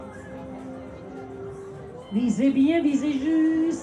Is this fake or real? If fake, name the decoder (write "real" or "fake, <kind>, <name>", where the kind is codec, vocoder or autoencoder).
real